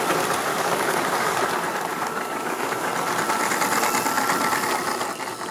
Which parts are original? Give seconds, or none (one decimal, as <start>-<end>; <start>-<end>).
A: 0.0-0.5; 1.4-1.9; 2.9-5.5